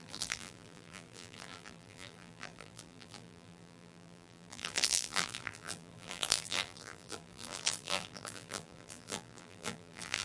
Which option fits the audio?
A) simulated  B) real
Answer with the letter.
A